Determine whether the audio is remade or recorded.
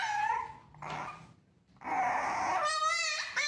recorded